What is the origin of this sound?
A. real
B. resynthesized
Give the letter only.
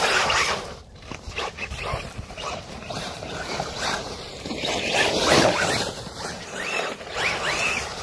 B